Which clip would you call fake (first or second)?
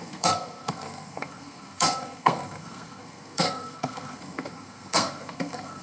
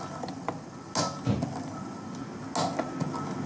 first